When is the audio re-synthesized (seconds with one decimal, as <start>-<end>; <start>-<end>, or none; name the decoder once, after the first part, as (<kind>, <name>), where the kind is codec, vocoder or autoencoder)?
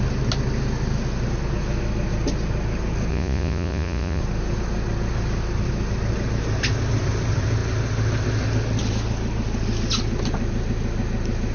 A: 3.1-4.2 (vocoder, Vocos)